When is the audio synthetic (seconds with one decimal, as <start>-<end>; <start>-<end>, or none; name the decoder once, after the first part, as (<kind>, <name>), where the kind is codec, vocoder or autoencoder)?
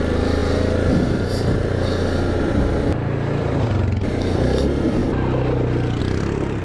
0.0-0.4 (vocoder, BigVGAN v2); 2.4-5.0; 6.0-6.6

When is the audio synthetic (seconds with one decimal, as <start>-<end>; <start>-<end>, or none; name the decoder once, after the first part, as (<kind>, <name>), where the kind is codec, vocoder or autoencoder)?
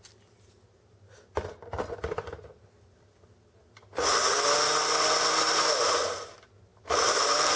6.7-7.6 (vocoder, BigVGAN v2)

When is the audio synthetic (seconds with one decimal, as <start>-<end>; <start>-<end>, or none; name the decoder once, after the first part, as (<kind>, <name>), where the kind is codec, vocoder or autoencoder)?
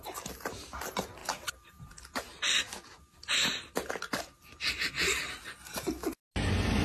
none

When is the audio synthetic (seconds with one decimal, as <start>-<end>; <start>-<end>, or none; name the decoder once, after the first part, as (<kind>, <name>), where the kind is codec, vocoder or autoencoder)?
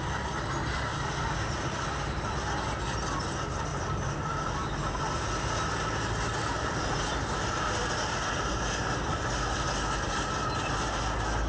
3.7-5.0 (vocoder, BigVGAN v2); 8.0-8.9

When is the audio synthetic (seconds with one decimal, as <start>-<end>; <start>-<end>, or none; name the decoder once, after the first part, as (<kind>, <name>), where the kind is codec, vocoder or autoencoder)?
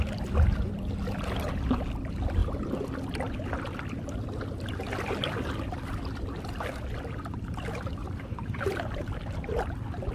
8.0-9.0 (vocoder, BigVGAN v2)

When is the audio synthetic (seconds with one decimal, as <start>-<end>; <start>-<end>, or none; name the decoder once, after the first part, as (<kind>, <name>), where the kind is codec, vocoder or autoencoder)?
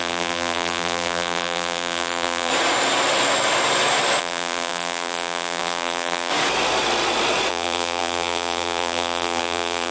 0.0-2.5 (vocoder, BigVGAN v2); 4.2-6.3; 7.5-9.9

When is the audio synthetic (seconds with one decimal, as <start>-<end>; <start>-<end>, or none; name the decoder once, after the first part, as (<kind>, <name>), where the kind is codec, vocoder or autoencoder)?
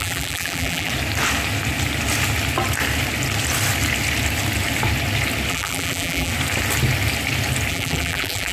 0.0-0.9 (vocoder, BigVGAN v2); 5.5-6.3; 7.7-8.5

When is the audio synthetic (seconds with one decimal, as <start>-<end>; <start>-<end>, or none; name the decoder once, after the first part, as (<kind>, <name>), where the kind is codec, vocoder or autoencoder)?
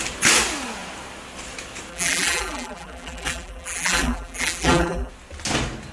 1.9-5.1 (vocoder, BigVGAN v2)